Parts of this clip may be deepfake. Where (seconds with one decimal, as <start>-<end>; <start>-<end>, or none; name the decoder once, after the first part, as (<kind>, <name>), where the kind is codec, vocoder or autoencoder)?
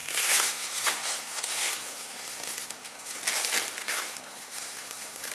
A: 0.0-3.2 (codec, SNAC); 3.8-5.3